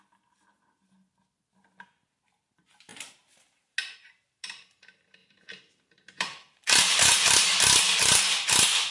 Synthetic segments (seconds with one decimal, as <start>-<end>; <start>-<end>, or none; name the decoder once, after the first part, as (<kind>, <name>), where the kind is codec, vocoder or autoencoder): 5.2-7.2 (vocoder, BigVGAN v2)